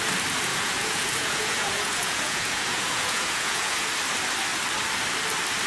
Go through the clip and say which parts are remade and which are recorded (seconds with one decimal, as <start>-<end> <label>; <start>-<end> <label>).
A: 0.0-0.5 recorded; 0.5-3.9 remade; 3.9-5.7 recorded